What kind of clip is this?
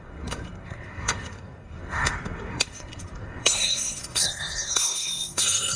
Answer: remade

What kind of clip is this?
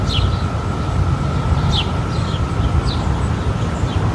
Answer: recorded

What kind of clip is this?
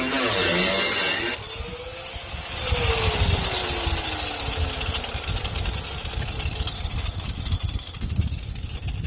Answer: recorded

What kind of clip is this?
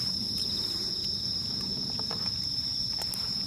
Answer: remade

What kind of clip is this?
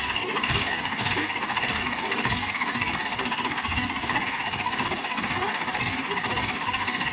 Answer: remade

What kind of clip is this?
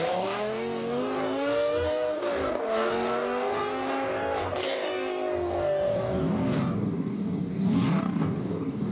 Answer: remade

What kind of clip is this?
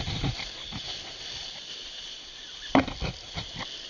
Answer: recorded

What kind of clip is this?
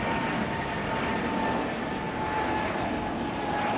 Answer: recorded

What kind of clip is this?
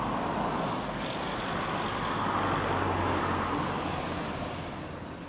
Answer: recorded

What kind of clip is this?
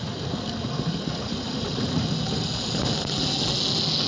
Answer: recorded